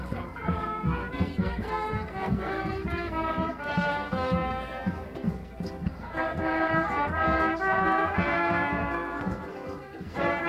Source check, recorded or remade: remade